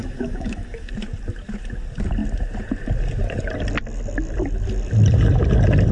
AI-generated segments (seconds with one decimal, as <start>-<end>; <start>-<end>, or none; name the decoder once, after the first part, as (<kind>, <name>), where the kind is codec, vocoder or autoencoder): 0.0-0.9 (autoencoder, DAC-VAE)